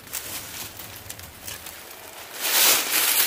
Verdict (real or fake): real